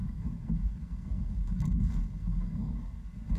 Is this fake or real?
fake